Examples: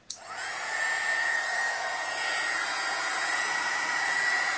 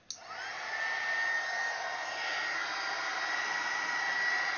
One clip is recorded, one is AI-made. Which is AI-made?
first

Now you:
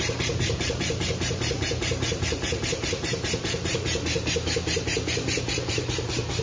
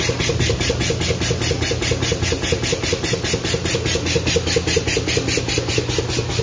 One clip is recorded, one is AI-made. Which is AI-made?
first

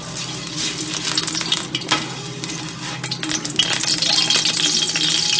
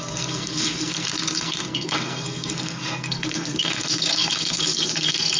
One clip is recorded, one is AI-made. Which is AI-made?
second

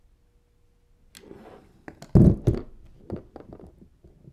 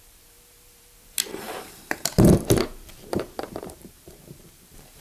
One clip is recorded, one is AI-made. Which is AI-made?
second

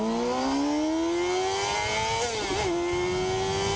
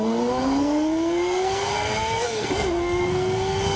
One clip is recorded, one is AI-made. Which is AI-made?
second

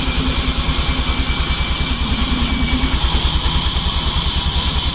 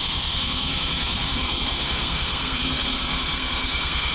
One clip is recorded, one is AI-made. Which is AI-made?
second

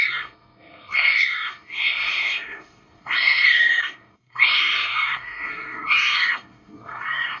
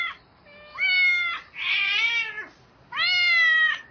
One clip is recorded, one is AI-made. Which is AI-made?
first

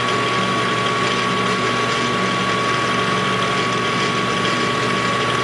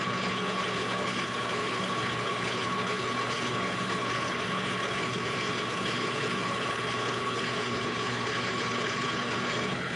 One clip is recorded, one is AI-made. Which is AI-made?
second